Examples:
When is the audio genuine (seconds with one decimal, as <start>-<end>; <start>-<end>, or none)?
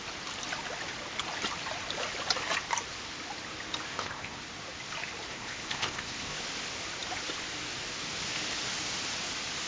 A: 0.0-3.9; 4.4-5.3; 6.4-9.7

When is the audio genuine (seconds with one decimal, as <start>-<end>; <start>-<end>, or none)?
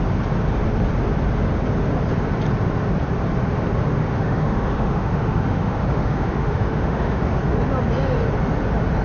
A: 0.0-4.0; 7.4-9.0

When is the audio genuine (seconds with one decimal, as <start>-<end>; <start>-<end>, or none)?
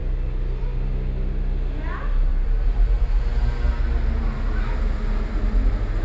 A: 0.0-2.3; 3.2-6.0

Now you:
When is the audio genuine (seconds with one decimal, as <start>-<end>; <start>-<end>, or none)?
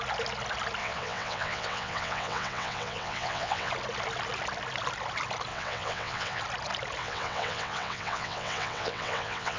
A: 0.0-0.8; 3.7-5.5; 6.4-7.0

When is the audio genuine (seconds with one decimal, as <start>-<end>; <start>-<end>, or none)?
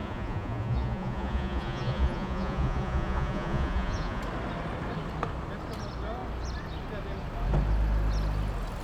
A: 4.2-8.8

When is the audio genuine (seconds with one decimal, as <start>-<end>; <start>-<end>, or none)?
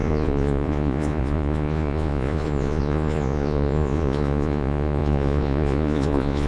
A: none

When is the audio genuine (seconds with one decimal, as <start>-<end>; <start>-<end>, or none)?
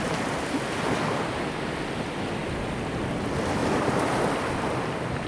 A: 0.0-5.3